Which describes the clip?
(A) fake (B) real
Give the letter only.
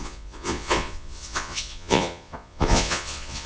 A